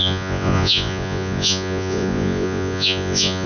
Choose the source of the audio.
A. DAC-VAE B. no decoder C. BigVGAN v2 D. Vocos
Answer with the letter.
D